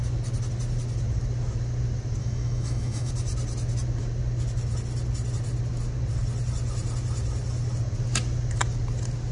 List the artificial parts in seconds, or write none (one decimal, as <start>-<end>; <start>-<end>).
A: 2.2-3.1